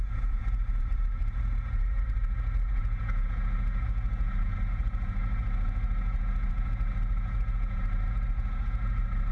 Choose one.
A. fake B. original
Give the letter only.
A